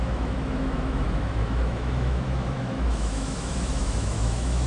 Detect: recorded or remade remade